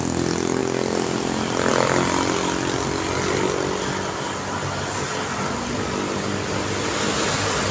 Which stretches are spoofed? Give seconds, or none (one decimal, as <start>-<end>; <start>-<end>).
none